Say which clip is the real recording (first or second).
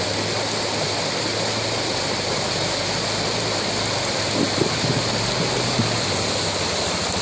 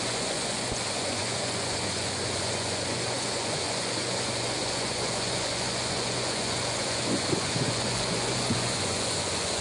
first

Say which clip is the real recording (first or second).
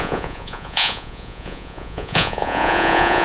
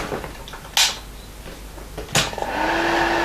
second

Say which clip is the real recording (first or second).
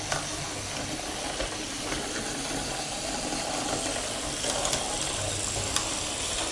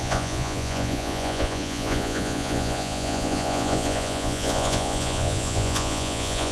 first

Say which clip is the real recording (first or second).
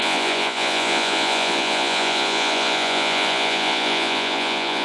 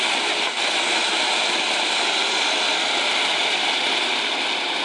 second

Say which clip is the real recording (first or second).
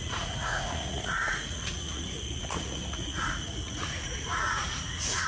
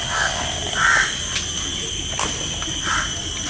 second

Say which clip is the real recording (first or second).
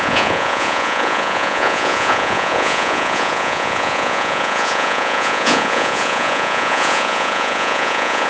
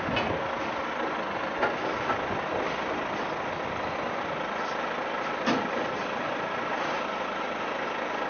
second